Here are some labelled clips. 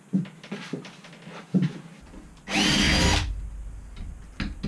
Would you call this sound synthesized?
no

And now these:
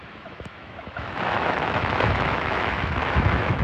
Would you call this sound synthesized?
yes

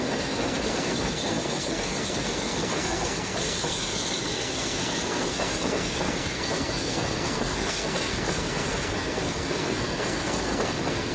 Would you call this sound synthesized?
yes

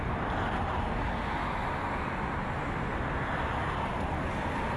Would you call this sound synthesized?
no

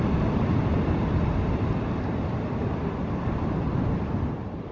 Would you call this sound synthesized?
no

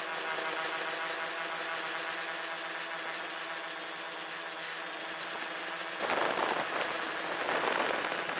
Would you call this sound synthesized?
no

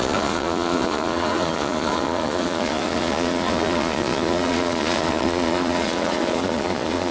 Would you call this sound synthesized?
yes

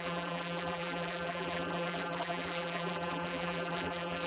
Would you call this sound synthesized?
yes